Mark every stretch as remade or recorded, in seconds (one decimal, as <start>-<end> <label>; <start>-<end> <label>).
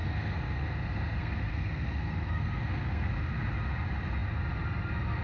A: 0.0-3.1 remade; 3.1-5.2 recorded